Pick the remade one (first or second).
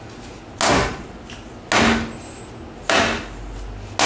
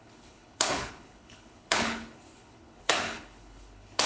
second